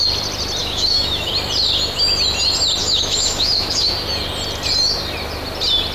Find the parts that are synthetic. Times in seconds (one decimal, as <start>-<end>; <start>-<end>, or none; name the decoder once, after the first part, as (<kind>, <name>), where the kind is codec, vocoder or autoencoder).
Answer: 0.6-1.3 (autoencoder, DAC-VAE); 2.8-3.9